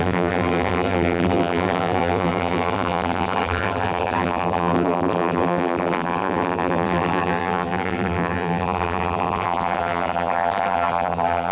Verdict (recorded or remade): remade